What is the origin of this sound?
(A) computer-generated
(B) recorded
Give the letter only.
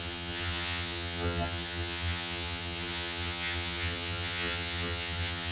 A